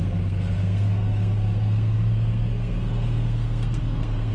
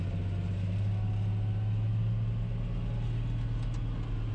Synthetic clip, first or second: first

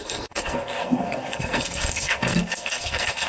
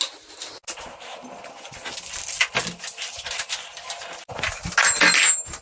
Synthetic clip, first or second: first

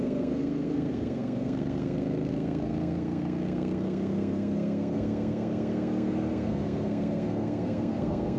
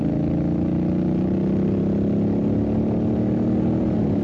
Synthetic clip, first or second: first